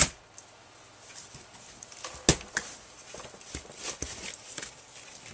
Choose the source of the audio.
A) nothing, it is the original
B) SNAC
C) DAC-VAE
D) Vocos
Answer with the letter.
A